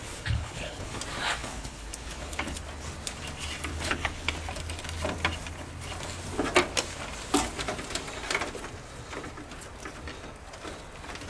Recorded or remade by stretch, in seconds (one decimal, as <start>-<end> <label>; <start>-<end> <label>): 0.0-1.0 remade; 1.0-1.4 recorded; 1.4-2.6 remade; 2.6-3.7 recorded; 3.7-4.3 remade; 4.3-11.3 recorded